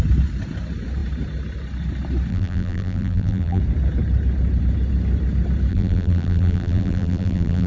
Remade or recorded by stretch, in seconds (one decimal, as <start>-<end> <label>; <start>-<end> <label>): 0.0-2.3 recorded; 2.3-3.6 remade; 3.6-5.7 recorded; 5.7-7.7 remade